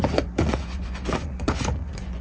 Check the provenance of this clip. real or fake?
fake